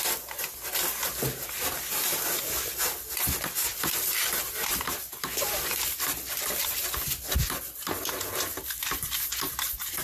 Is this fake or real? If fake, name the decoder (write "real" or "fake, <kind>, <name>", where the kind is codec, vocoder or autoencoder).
real